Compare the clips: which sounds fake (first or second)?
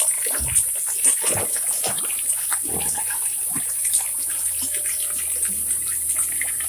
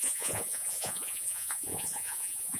second